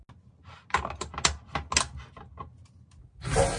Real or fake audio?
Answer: real